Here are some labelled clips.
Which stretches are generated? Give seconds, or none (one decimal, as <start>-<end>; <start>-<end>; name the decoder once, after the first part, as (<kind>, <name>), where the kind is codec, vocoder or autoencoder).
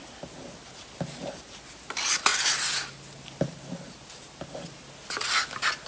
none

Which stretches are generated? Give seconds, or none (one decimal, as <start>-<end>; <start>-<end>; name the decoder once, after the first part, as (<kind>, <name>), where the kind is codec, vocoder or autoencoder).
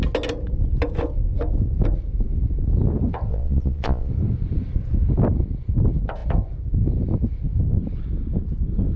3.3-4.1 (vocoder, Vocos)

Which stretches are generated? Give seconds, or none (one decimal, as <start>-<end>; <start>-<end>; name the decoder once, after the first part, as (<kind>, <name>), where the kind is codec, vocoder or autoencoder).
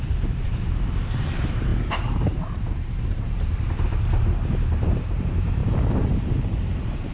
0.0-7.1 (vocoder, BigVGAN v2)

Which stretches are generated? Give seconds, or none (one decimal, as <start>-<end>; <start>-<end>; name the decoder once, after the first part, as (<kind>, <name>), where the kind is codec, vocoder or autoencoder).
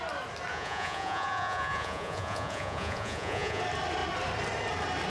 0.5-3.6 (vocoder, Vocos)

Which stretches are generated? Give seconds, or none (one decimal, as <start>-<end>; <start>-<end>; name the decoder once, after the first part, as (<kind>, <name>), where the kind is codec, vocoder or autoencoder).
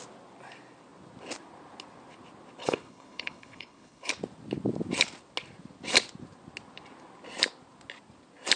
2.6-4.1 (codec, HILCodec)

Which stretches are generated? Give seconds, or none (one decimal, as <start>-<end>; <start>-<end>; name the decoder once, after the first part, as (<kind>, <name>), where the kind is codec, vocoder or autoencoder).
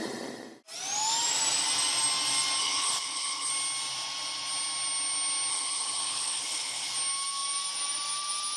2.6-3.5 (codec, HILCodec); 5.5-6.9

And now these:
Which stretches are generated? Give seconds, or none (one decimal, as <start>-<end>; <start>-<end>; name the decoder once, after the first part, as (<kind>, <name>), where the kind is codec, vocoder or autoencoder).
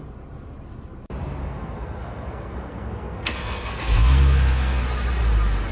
1.4-4.8 (codec, SNAC)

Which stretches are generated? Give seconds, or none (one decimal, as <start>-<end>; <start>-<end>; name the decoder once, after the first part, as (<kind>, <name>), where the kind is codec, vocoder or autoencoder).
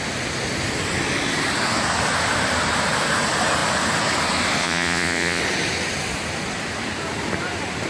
4.6-5.4 (vocoder, Vocos)